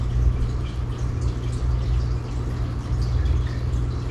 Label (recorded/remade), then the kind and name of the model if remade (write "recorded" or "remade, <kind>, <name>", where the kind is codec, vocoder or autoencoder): recorded